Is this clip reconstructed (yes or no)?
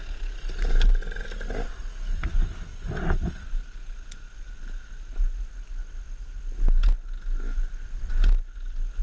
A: no